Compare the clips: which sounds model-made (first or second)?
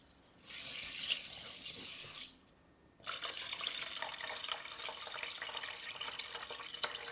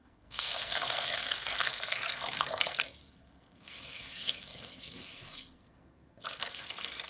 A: second